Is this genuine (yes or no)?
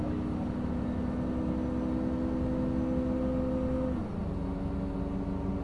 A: yes